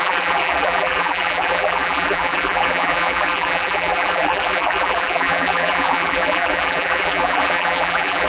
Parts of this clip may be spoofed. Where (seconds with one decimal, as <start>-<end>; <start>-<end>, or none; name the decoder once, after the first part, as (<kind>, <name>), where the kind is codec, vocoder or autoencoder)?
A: 0.0-8.3 (vocoder, BigVGAN v2)